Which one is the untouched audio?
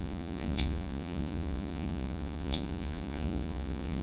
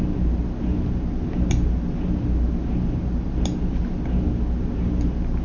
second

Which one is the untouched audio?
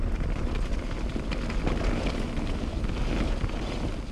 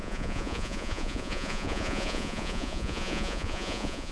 first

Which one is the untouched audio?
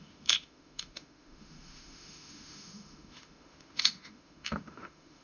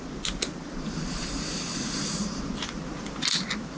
second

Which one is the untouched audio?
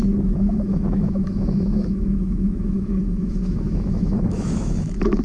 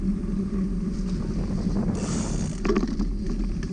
second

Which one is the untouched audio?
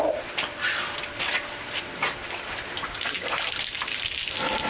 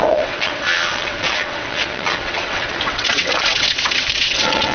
first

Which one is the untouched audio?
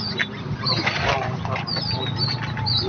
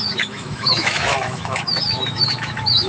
first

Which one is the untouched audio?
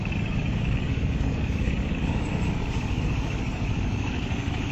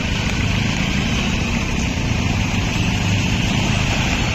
second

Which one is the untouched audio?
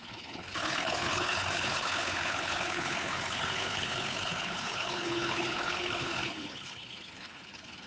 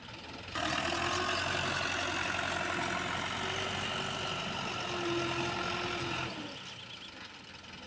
second